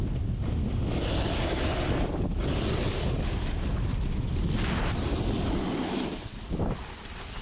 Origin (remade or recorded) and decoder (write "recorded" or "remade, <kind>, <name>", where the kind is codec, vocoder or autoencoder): recorded